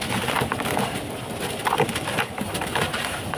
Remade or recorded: recorded